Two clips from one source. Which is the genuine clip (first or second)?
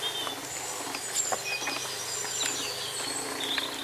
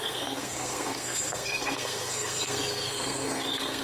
first